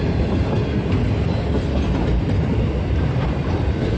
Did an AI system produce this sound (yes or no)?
no